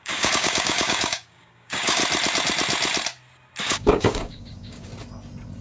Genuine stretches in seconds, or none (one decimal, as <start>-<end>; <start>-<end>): 2.0-3.6; 4.9-5.6